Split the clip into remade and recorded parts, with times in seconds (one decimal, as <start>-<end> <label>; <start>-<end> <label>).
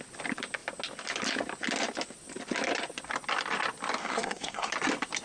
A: 0.0-4.0 recorded; 4.0-4.7 remade; 4.7-5.2 recorded